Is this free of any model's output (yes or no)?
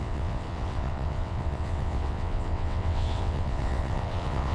no